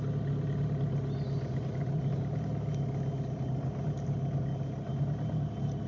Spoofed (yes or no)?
no